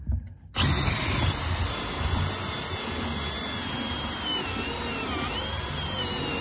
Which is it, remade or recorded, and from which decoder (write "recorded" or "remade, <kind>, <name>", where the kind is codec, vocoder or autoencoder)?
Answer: recorded